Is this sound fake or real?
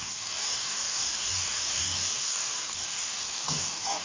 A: fake